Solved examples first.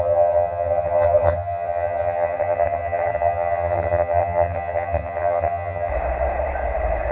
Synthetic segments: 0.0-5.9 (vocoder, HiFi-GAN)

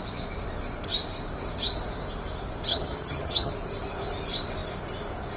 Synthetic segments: 2.7-3.5 (vocoder, HiFi-GAN)

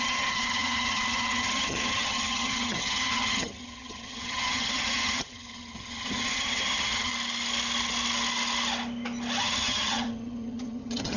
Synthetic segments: 0.0-7.1 (vocoder, HiFi-GAN); 9.4-11.2

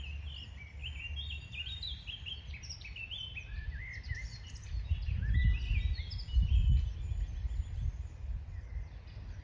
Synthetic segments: none

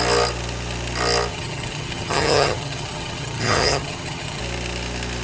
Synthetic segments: 1.3-4.4 (vocoder, HiFi-GAN)

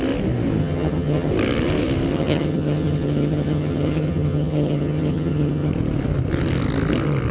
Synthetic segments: 0.6-1.3 (vocoder, HiFi-GAN); 2.1-5.7

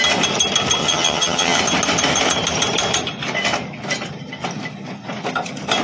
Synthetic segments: 0.8-1.6 (vocoder, HiFi-GAN)